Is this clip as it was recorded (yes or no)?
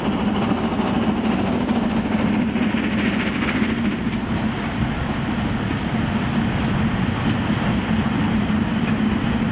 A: yes